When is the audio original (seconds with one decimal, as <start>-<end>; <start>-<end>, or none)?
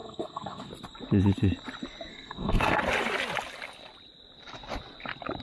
0.7-2.1; 2.8-5.4